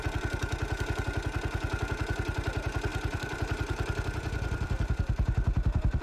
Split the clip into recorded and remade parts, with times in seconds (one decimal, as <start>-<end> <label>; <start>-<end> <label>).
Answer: 0.0-2.9 recorded; 2.9-6.0 remade